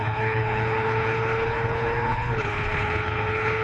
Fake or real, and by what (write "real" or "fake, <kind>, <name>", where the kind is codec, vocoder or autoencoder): fake, codec, HILCodec